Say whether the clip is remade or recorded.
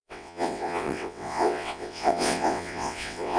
remade